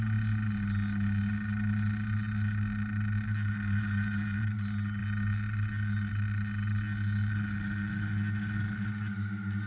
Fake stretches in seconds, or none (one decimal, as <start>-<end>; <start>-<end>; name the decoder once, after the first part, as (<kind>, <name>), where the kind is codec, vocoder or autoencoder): none